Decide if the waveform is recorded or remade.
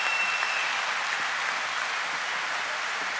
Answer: recorded